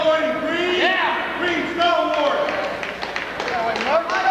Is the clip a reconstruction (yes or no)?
no